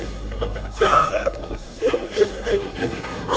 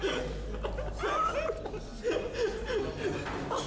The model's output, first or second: first